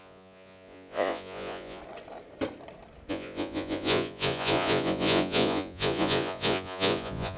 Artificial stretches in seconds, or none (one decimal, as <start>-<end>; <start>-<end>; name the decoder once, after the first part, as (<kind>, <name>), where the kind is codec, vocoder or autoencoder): 0.0-1.8 (vocoder, Vocos); 3.1-7.4